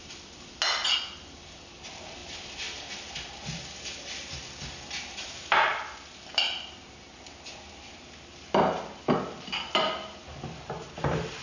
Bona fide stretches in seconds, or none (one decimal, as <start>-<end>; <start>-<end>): 0.0-11.4